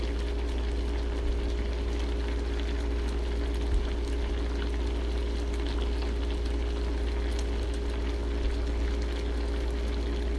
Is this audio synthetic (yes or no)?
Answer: no